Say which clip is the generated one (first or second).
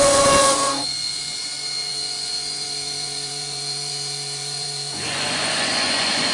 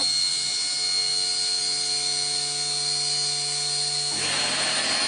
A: first